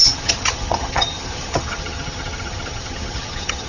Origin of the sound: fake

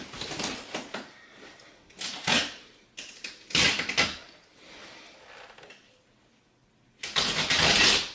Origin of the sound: real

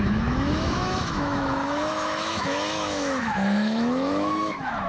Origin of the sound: fake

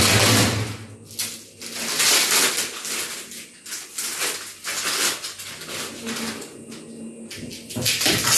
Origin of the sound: real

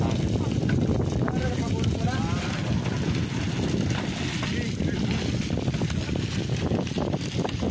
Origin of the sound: real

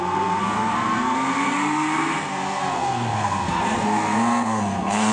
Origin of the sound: fake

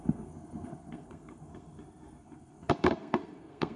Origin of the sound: fake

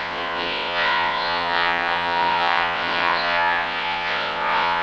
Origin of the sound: fake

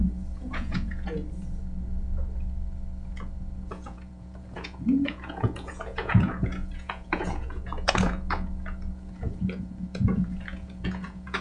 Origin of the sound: fake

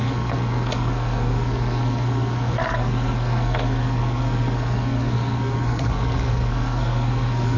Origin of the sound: fake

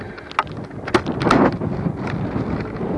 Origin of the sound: real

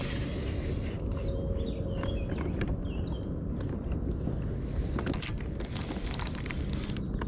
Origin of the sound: real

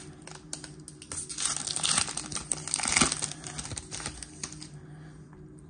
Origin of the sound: real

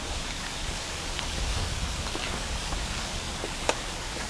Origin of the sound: fake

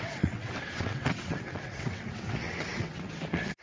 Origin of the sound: fake